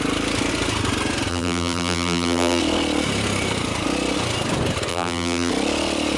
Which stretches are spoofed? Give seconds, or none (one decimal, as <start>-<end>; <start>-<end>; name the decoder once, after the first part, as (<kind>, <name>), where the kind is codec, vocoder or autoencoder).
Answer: 1.3-2.6 (vocoder, BigVGAN v2); 4.9-5.5